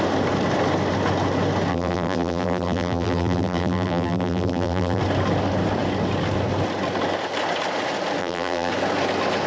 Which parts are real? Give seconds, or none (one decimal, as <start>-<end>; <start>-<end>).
0.0-1.7; 5.0-8.2; 8.7-9.5

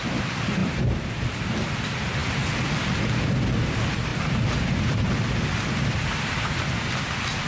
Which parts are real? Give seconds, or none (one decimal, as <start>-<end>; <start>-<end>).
0.0-0.6; 1.1-7.5

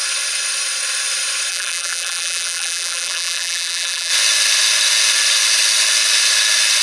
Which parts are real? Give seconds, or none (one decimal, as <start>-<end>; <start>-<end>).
0.0-1.5; 4.1-6.8

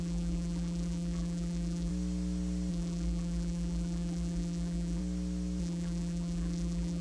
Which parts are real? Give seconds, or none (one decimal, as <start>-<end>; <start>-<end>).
1.9-2.7; 5.0-5.6

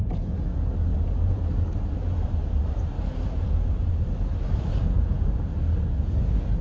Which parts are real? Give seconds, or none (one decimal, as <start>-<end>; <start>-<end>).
0.0-0.9; 4.9-6.6

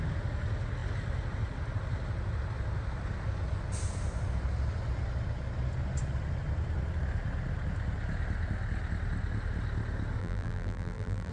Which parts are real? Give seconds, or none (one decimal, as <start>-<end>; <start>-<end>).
0.0-10.2